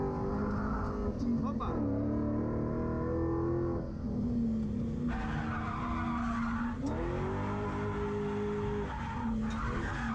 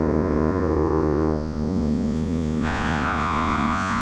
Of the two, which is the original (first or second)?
first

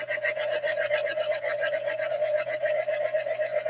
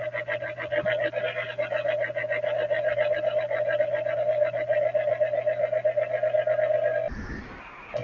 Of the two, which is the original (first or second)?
second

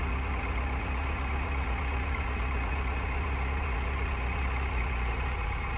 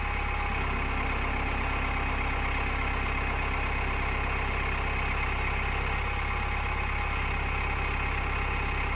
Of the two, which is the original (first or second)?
second